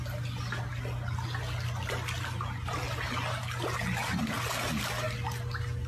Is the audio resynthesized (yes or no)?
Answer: no